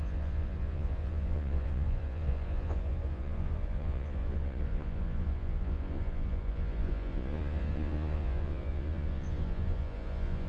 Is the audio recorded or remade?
remade